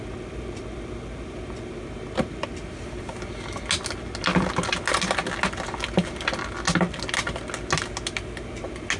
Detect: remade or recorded recorded